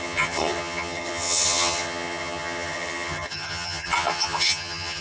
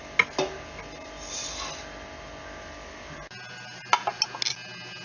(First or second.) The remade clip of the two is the first